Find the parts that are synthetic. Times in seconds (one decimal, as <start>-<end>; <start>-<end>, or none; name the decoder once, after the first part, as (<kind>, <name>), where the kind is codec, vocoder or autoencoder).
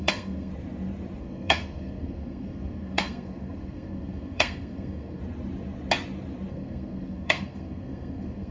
0.0-0.5 (codec, SNAC); 1.2-5.2; 6.5-8.5